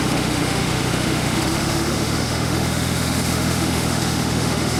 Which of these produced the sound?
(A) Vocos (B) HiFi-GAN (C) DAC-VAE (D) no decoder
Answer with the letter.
C